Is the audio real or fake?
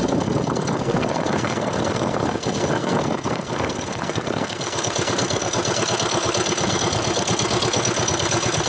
fake